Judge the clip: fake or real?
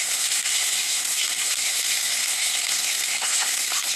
fake